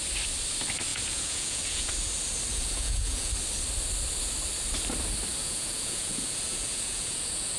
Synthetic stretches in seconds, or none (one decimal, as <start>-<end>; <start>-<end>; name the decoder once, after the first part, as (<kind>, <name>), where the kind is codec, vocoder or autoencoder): 0.9-1.9 (vocoder, Vocos); 2.5-3.3; 5.3-7.6